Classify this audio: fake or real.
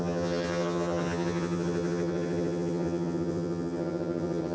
fake